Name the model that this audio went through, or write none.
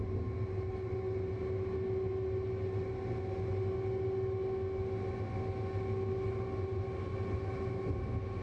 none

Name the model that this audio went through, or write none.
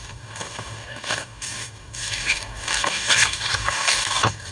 codec, DAC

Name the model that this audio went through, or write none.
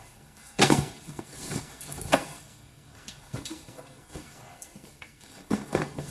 codec, SNAC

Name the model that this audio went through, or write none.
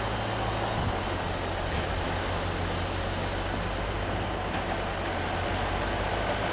none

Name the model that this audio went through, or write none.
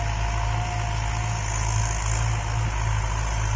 none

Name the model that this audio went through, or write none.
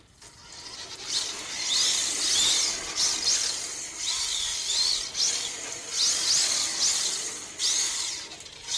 none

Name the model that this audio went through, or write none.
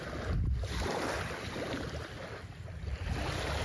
none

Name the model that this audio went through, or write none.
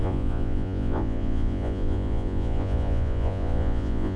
vocoder, Vocos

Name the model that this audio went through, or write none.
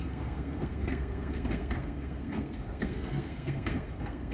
codec, SNAC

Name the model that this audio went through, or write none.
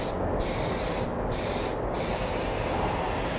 none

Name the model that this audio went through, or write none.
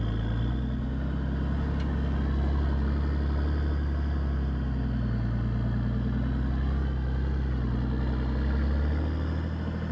none